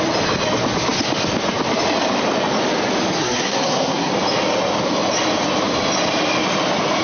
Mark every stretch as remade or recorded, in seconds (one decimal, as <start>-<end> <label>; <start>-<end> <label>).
0.0-3.2 recorded; 3.2-4.1 remade; 4.1-7.0 recorded